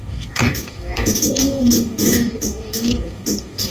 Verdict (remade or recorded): remade